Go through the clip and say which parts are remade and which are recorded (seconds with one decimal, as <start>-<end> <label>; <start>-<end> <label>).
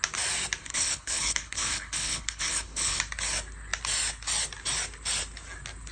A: 0.0-0.6 recorded; 0.6-3.0 remade; 3.0-5.9 recorded